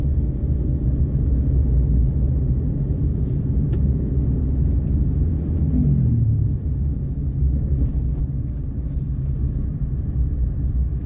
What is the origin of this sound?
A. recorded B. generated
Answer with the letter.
A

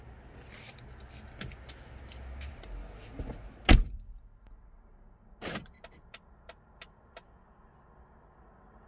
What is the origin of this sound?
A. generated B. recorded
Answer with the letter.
B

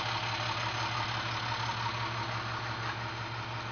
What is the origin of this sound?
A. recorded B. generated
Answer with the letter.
A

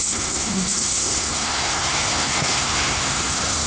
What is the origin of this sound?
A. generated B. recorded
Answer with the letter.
A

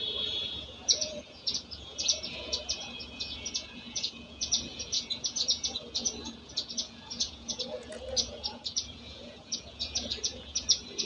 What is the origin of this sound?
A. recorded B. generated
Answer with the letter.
B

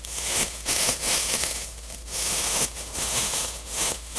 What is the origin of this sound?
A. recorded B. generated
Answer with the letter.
B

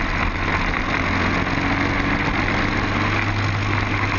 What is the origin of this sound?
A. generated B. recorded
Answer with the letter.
B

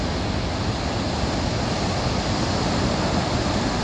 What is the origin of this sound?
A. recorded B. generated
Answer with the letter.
A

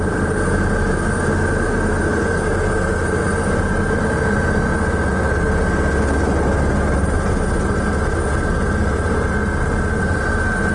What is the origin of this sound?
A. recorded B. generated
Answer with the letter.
A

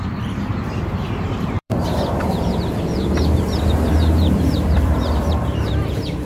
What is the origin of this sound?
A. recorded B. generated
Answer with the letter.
B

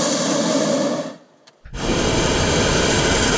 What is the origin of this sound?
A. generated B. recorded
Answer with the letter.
B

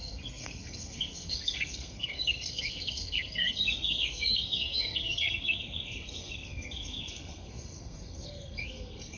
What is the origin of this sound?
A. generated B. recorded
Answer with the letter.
A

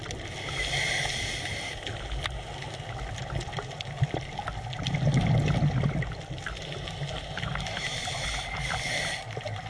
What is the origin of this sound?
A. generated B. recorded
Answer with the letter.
B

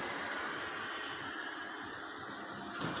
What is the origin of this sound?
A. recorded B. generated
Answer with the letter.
A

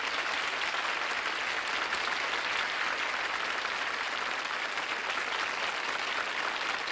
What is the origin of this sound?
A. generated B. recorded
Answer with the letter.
B